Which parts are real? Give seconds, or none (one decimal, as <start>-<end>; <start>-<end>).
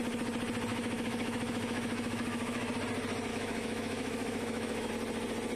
0.0-0.7; 2.7-3.3; 4.9-5.6